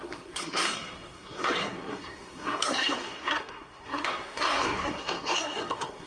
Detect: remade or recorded remade